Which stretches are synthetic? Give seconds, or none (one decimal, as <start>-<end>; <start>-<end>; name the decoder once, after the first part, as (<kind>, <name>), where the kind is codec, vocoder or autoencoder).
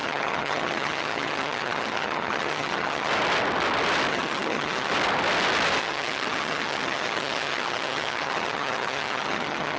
0.0-3.1 (vocoder, HiFi-GAN); 4.1-4.9; 5.8-9.8